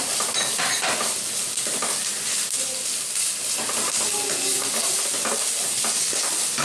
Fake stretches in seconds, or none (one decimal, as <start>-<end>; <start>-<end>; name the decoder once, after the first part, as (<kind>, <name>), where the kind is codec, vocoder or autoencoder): none